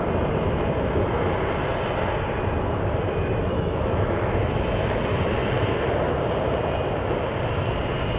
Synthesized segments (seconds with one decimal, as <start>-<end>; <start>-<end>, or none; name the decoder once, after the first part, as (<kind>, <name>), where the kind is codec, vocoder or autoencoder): 3.4-5.0 (autoencoder, DAC-VAE)